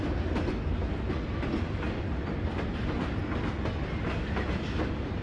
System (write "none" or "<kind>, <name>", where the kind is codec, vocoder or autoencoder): none